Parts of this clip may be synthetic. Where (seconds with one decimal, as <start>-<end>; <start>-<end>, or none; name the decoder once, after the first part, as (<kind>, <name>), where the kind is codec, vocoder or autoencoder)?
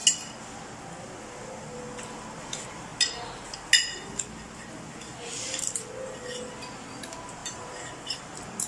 7.4-8.2 (vocoder, BigVGAN v2)